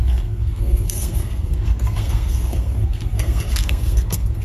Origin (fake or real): fake